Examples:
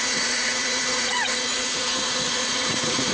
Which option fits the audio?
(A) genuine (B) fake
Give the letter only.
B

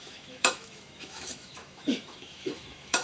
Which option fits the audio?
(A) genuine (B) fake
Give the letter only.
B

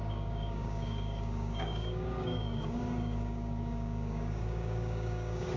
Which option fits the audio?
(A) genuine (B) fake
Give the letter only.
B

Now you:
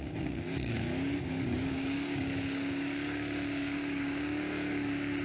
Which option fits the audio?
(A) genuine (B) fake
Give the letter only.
B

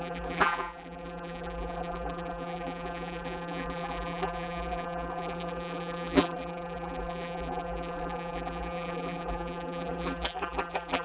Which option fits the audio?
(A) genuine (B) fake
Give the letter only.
B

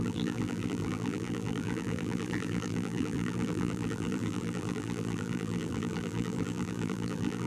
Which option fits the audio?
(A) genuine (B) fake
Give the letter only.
B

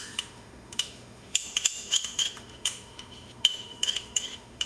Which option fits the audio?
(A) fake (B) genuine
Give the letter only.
A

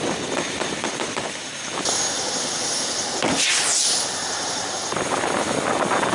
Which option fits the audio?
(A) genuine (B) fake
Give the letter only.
A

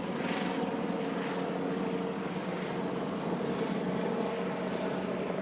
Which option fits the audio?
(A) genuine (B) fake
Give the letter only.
A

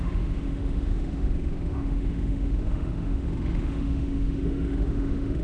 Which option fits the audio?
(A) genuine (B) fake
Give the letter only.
B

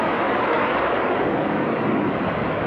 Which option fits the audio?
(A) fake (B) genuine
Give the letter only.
A